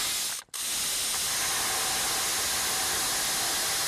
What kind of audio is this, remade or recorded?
recorded